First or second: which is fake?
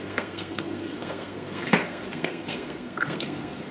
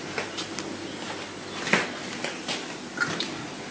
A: first